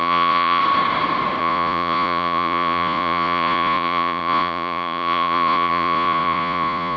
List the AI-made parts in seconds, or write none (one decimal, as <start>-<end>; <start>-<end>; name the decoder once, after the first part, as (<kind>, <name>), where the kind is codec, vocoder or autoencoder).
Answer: 0.0-0.6 (vocoder, Vocos); 1.4-7.0